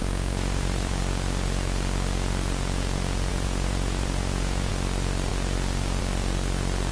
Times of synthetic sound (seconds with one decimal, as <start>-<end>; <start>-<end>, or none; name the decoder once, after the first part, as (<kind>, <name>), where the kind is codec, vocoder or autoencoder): 0.0-0.9 (vocoder, Vocos); 3.3-4.7